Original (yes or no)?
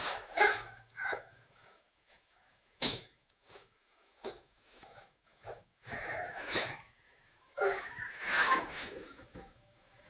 no